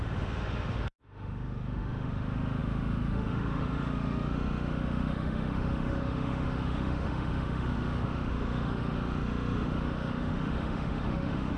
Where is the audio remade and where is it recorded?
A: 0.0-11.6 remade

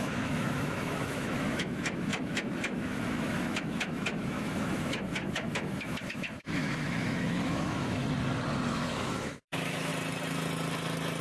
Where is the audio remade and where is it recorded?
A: 0.0-8.0 remade; 8.0-8.7 recorded; 8.7-9.9 remade; 9.9-11.2 recorded

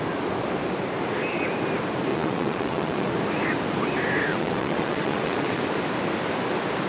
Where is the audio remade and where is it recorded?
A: 0.0-2.1 recorded; 2.1-3.1 remade; 3.1-4.3 recorded; 4.3-5.6 remade; 5.6-6.9 recorded

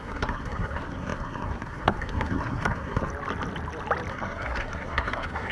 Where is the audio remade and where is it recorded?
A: 0.0-3.1 remade; 3.1-4.1 recorded; 4.1-5.5 remade